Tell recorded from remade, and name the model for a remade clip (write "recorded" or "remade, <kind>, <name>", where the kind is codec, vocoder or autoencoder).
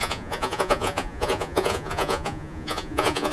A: remade, vocoder, Vocos